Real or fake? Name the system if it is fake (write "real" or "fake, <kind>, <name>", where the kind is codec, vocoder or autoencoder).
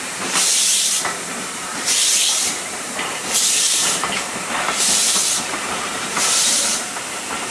fake, vocoder, BigVGAN v2